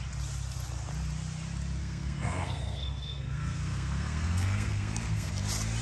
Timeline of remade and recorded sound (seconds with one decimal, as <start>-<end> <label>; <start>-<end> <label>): 0.0-1.8 recorded; 1.8-5.3 remade; 5.3-5.8 recorded